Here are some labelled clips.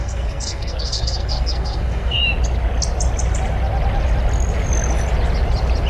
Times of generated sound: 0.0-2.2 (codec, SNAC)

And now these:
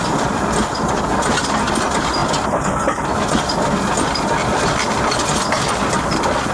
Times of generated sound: none

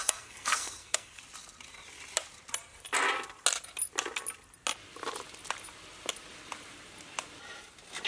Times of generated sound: 0.0-1.2 (codec, SNAC)

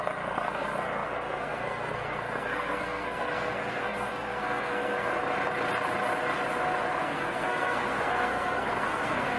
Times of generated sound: 0.0-5.1 (codec, SNAC); 7.0-9.4

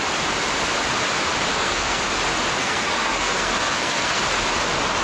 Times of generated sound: 1.5-2.0 (codec, SNAC); 2.6-4.2

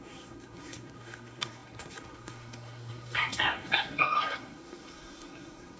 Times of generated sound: 0.0-5.8 (codec, SNAC)

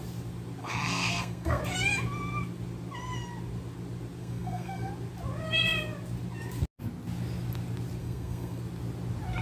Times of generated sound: 0.6-1.6 (codec, SNAC); 4.2-4.9; 8.0-8.6

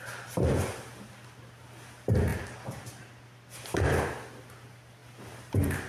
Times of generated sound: none